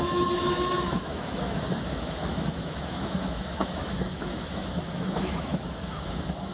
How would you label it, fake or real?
fake